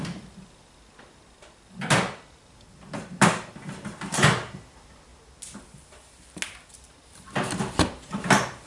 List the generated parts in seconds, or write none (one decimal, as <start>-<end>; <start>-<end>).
none